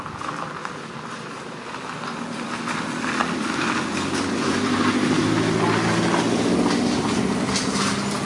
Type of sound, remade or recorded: recorded